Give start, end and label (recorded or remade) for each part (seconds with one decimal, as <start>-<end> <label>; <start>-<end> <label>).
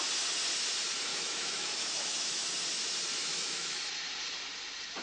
0.0-1.1 recorded; 1.1-2.5 remade; 2.5-3.2 recorded; 3.2-3.8 remade; 3.8-5.0 recorded